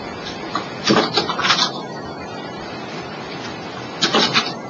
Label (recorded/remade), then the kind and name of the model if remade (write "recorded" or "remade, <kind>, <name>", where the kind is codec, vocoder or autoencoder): recorded